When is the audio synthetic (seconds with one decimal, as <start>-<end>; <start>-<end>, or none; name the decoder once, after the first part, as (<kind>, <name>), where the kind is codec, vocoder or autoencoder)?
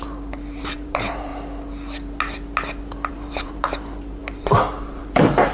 0.0-1.3 (vocoder, BigVGAN v2); 3.1-5.5